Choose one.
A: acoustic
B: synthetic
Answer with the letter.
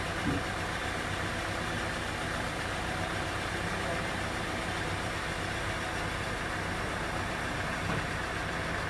A